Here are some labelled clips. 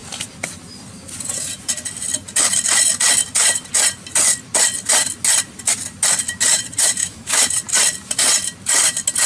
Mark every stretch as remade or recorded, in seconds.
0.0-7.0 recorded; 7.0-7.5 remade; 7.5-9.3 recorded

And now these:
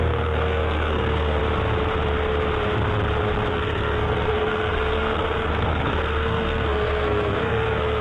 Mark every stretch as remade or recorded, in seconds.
0.0-1.4 remade; 1.4-3.5 recorded; 3.5-8.0 remade